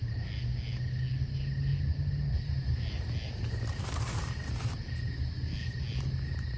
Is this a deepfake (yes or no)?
no